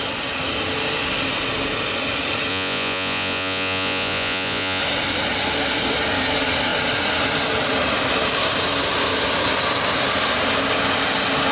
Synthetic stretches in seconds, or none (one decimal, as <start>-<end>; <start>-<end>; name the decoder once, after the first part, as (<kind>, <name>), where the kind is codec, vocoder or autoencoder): 2.5-4.8 (vocoder, Vocos)